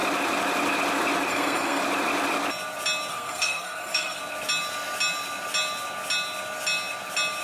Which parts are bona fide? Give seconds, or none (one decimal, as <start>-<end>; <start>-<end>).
0.0-1.3; 1.8-3.1; 4.2-7.4

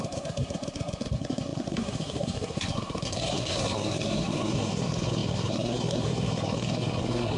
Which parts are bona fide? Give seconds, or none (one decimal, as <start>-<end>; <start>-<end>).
none

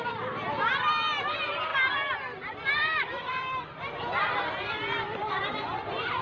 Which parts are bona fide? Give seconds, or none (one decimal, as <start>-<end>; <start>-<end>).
0.0-6.2

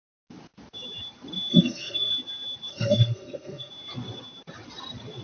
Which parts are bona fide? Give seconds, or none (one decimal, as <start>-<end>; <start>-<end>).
0.0-1.5; 2.1-2.7; 3.7-5.2

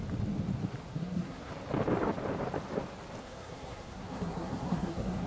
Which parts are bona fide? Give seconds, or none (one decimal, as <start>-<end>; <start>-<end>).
0.0-0.9; 1.5-3.2